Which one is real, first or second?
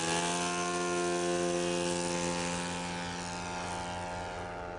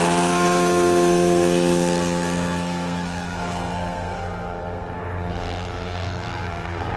first